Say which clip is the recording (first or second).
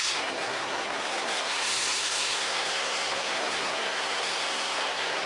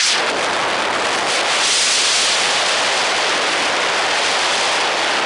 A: second